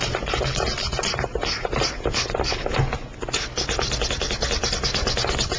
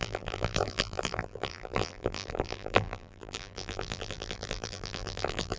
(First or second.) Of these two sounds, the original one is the first